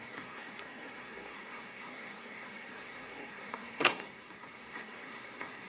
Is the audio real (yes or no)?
no